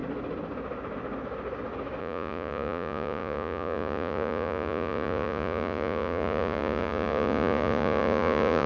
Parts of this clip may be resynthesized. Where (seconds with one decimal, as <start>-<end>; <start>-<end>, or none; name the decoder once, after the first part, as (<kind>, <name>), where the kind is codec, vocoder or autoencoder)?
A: 2.0-8.7 (vocoder, Vocos)